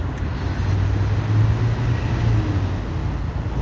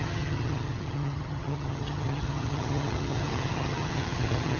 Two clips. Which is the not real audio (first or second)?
second